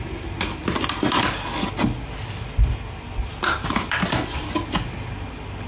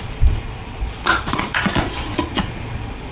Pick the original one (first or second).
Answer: first